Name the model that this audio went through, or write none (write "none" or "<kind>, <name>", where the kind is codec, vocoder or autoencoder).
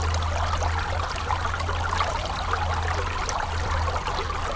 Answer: none